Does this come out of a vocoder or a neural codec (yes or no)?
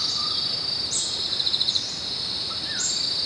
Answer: no